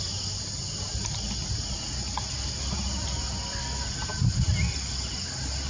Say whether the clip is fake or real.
real